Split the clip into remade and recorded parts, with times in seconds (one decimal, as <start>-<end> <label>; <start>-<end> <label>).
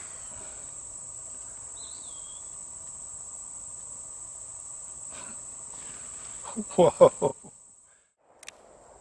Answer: 0.0-9.0 recorded